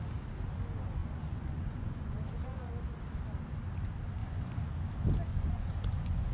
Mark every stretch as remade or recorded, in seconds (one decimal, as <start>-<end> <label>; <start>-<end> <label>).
0.0-1.0 recorded; 1.0-2.7 remade; 2.7-4.2 recorded; 4.2-4.7 remade; 4.7-5.3 recorded; 5.3-6.3 remade